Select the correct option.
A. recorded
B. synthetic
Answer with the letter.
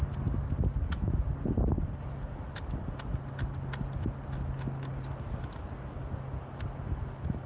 A